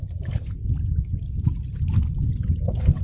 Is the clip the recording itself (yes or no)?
yes